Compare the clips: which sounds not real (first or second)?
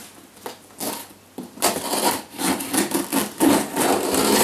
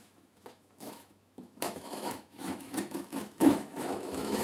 second